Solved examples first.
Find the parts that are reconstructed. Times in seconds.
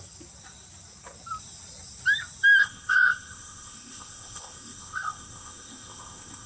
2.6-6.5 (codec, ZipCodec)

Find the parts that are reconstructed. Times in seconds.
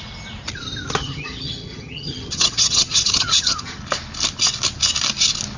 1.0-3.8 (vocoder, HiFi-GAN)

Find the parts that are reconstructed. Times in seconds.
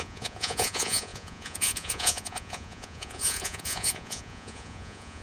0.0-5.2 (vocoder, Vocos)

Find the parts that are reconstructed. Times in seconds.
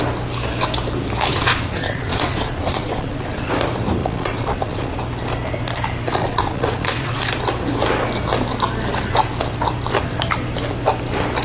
1.3-3.5 (vocoder, Vocos); 4.0-5.0; 6.1-7.2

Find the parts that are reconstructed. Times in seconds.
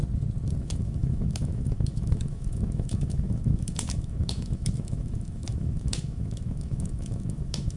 0.6-7.8 (autoencoder, DAC-VAE)